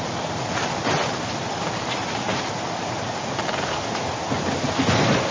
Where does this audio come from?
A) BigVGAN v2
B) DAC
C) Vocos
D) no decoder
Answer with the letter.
D